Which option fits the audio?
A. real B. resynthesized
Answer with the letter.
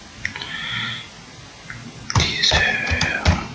A